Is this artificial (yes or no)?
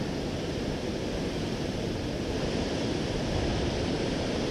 no